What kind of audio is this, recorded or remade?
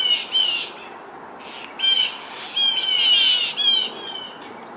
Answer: recorded